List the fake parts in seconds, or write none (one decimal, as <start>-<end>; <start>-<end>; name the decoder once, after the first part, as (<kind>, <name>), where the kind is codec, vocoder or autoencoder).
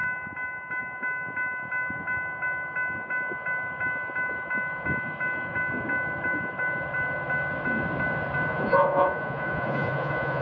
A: 8.5-10.4 (vocoder, Vocos)